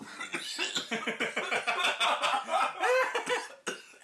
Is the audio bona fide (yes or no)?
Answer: yes